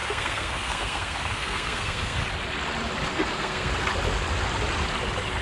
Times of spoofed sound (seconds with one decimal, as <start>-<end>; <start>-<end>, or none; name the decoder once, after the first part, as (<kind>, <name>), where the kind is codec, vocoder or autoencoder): 0.0-2.2 (codec, SNAC); 3.1-3.7